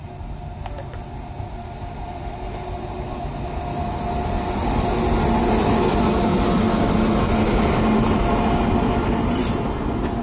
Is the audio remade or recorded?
recorded